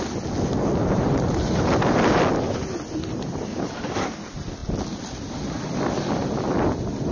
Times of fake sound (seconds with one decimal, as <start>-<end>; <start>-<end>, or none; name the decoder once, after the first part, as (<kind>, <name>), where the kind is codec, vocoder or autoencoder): 0.8-1.6 (vocoder, BigVGAN v2)